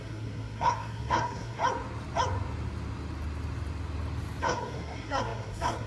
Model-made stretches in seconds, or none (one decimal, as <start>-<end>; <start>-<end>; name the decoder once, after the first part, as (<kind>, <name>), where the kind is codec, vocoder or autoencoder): 0.0-1.6 (codec, SNAC); 4.4-5.9